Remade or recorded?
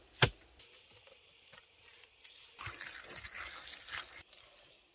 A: recorded